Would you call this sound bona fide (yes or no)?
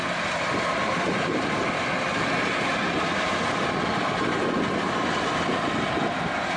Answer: yes